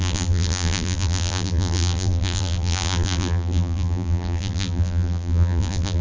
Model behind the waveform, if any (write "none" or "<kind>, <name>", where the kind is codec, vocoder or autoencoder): vocoder, BigVGAN v2